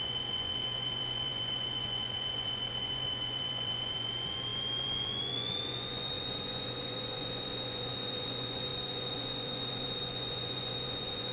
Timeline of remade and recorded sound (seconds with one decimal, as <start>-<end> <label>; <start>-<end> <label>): 0.0-11.3 remade